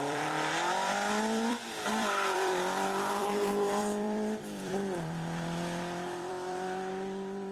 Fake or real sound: fake